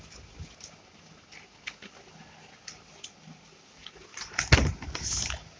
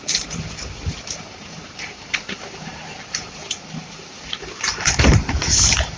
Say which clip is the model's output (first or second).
second